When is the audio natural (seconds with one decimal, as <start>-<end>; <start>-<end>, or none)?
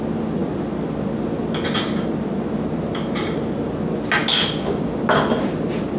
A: 0.0-6.0